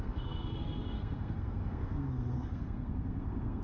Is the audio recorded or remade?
remade